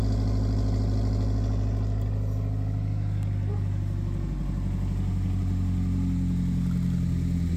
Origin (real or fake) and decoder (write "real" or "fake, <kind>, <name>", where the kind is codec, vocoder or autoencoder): real